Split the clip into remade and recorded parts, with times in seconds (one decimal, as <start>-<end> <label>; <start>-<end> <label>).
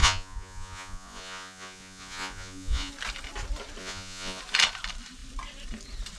0.0-2.9 remade; 2.9-3.8 recorded; 3.8-4.4 remade; 4.4-6.2 recorded